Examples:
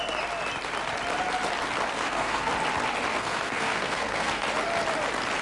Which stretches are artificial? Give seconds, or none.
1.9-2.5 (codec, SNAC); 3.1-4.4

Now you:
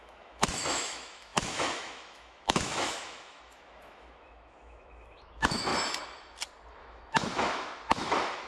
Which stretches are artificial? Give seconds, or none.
0.0-5.7 (autoencoder, DAC-VAE); 6.7-8.5

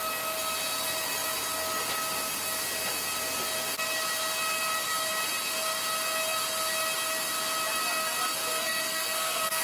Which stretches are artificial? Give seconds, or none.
8.5-9.6 (codec, SNAC)